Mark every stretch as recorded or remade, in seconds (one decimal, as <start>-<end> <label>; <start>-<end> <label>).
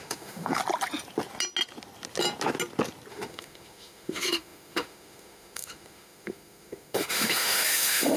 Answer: 0.0-0.6 remade; 0.6-3.1 recorded; 3.1-8.2 remade